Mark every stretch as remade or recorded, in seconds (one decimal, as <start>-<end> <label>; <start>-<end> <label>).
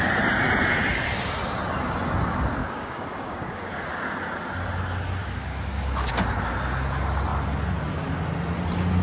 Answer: 0.0-2.6 recorded; 2.6-3.8 remade; 3.8-5.2 recorded; 5.2-6.1 remade; 6.1-9.0 recorded